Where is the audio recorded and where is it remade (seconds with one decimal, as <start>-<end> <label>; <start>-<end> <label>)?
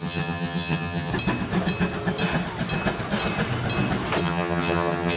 0.0-1.1 remade; 1.1-4.2 recorded; 4.2-5.2 remade